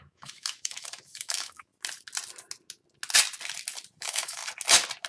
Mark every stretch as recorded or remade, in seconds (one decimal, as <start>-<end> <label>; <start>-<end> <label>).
0.0-1.7 remade; 1.7-4.0 recorded; 4.0-4.4 remade; 4.4-5.1 recorded

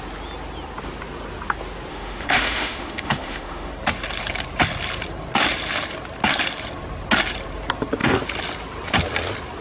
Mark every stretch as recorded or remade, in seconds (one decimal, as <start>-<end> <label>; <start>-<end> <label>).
0.0-1.9 recorded; 1.9-3.7 remade; 3.7-9.6 recorded

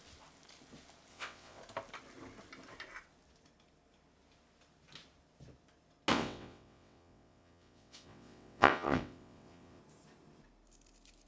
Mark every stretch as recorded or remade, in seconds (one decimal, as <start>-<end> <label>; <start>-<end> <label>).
0.0-1.1 recorded; 1.1-1.6 remade; 1.6-6.1 recorded; 6.1-9.8 remade; 9.8-11.3 recorded

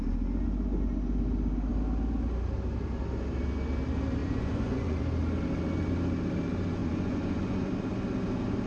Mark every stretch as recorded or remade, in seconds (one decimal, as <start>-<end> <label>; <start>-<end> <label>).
0.0-4.2 recorded; 4.2-5.0 remade; 5.0-6.8 recorded; 6.8-7.7 remade; 7.7-8.7 recorded

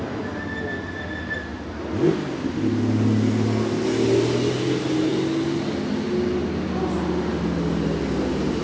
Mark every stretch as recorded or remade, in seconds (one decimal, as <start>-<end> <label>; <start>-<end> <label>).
0.0-8.6 recorded

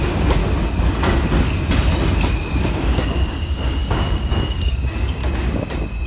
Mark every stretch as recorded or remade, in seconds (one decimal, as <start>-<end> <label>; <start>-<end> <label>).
0.0-0.4 remade; 0.4-2.6 recorded; 2.6-5.2 remade; 5.2-6.1 recorded

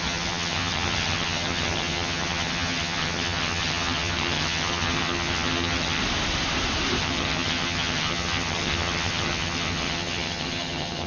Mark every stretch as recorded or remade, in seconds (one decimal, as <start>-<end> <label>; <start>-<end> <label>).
0.0-6.0 remade; 6.0-7.0 recorded; 7.0-11.1 remade